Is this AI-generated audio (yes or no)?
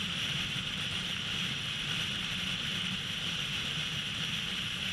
yes